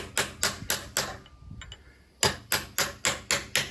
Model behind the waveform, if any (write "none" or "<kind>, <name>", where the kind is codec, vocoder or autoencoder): none